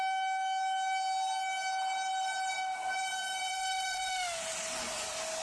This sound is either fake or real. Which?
real